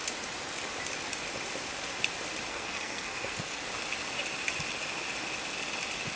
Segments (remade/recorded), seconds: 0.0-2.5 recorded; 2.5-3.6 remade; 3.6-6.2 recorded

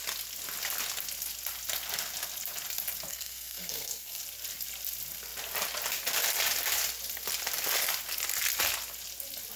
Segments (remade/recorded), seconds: 0.0-3.1 recorded; 3.1-4.2 remade; 4.2-9.6 recorded

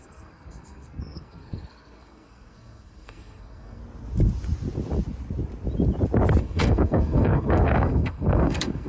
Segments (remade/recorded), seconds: 0.0-3.8 remade; 3.8-6.4 recorded; 6.4-8.9 remade

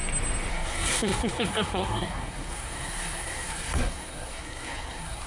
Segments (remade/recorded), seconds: 0.0-0.5 recorded; 0.5-5.3 remade